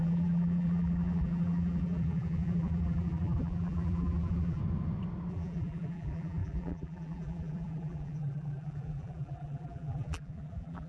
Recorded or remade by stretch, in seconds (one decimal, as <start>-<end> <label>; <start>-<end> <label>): 0.0-4.6 remade; 4.6-5.3 recorded; 5.3-10.9 remade